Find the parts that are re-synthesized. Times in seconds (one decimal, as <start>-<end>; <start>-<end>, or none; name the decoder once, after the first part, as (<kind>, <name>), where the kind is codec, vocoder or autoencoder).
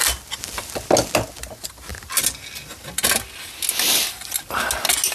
none